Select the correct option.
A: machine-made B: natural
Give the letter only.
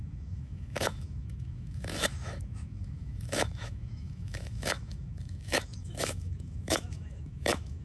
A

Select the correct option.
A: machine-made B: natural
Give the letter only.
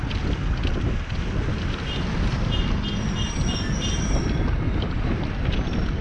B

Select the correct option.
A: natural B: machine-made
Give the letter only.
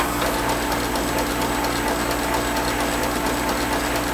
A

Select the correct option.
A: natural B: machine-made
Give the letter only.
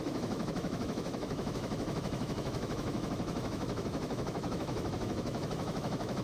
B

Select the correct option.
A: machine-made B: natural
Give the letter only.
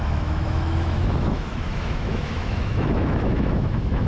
A